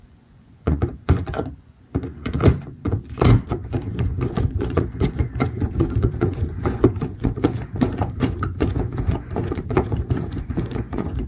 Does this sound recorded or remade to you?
remade